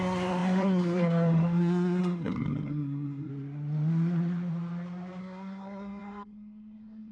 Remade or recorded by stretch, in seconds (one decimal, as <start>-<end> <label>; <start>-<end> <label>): 0.0-3.3 remade; 3.3-5.2 recorded; 5.2-7.1 remade